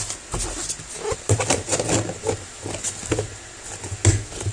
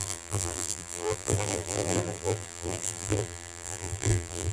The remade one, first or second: second